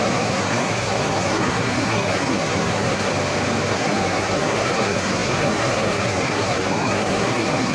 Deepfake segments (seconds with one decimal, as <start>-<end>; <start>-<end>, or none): 0.0-3.1; 3.7-7.7